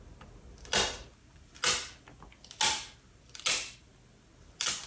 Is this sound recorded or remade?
recorded